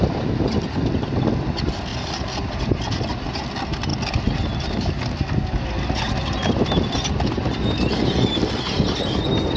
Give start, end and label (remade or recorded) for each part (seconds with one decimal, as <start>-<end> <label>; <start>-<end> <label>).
0.0-9.6 recorded